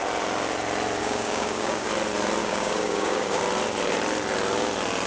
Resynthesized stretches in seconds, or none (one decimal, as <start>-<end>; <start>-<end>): 1.0-1.9; 2.4-3.4